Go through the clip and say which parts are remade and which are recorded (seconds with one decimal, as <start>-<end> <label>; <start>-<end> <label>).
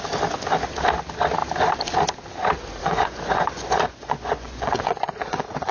0.0-2.8 recorded; 2.8-5.7 remade